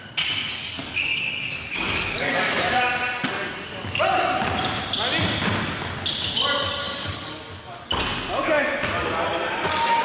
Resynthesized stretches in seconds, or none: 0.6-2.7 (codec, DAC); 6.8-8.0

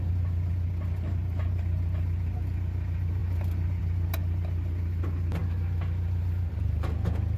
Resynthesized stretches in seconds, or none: none

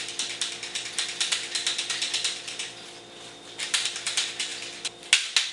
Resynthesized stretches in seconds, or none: none

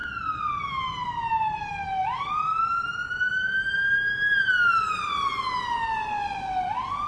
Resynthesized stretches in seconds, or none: 0.0-0.6 (vocoder, BigVGAN v2); 2.0-2.6